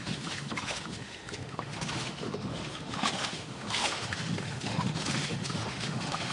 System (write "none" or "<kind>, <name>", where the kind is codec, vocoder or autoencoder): autoencoder, DAC-VAE